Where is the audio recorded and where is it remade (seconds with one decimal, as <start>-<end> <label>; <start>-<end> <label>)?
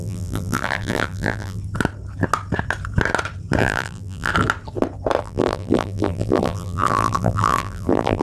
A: 0.0-1.6 remade; 1.6-3.6 recorded; 3.6-4.3 remade; 4.3-5.2 recorded; 5.2-8.2 remade